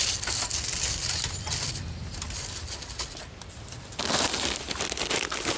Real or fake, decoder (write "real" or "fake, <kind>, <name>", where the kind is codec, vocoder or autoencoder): real